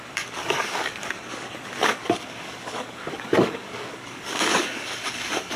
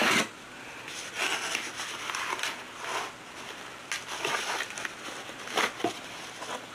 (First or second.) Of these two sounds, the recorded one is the second